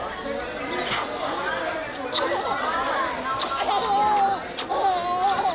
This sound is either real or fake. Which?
real